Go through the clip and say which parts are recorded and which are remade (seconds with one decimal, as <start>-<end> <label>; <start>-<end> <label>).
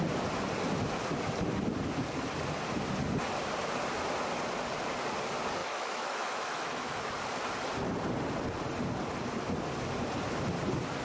0.0-5.6 recorded; 5.6-7.1 remade; 7.1-11.0 recorded